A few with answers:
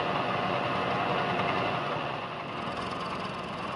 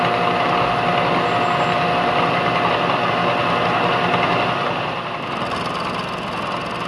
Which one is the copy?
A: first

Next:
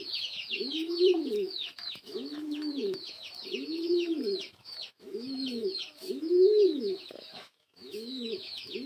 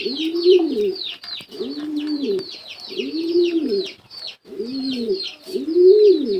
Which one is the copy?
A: first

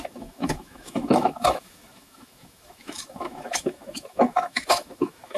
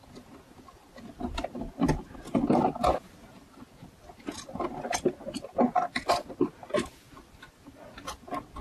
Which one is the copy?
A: first